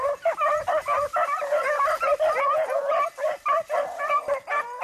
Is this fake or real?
real